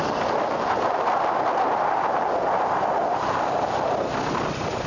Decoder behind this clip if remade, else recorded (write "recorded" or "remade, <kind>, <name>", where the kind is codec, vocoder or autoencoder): recorded